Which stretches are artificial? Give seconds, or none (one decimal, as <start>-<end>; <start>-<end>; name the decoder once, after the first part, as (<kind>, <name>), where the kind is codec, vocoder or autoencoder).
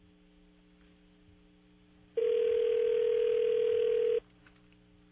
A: none